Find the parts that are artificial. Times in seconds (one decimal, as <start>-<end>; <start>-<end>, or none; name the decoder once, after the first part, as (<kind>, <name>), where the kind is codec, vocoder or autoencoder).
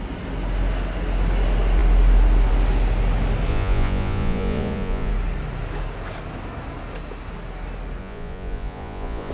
3.5-5.1 (vocoder, Vocos); 8.0-9.3